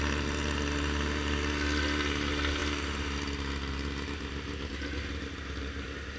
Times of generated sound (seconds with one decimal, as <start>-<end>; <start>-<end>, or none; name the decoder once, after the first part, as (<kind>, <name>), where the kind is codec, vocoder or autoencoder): none